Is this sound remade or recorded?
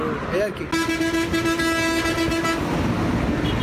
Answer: recorded